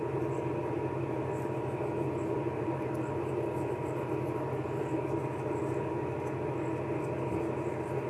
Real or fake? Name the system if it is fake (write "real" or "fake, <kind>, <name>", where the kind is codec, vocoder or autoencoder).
real